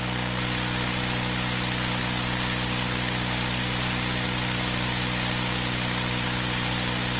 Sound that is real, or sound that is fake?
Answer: real